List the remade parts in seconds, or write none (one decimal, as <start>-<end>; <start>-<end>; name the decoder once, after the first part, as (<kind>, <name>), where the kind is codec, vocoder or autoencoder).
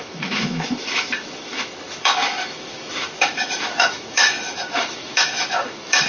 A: 0.0-6.1 (autoencoder, DAC-VAE)